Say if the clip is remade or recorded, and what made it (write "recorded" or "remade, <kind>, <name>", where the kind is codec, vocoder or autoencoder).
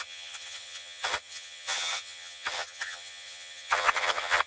remade, vocoder, HiFi-GAN